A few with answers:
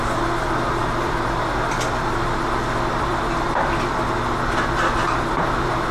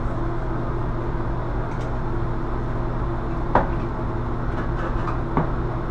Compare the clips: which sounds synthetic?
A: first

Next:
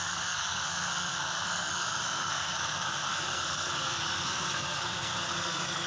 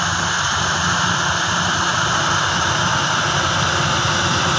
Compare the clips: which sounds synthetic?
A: first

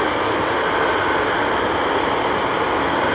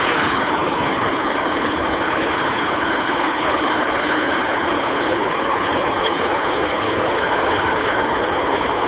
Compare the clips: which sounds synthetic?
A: second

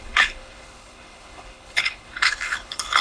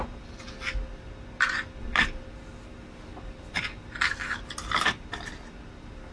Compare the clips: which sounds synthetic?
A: first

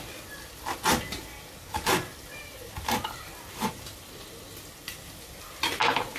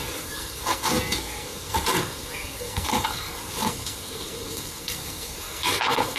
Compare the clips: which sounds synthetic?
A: second